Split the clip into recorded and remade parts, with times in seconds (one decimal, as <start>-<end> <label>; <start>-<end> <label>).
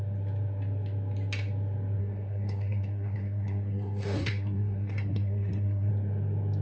0.0-2.0 recorded; 2.0-5.9 remade; 5.9-6.6 recorded